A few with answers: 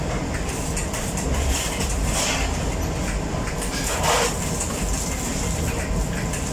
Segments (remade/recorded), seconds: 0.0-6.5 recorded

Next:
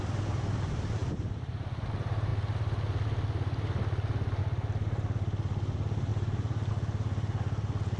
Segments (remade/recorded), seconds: 0.0-1.0 recorded; 1.0-1.8 remade; 1.8-6.1 recorded; 6.1-6.7 remade; 6.7-8.0 recorded

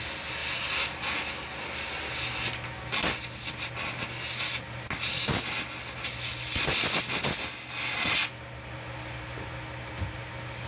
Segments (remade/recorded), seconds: 0.0-0.4 recorded; 0.4-0.9 remade; 0.9-10.7 recorded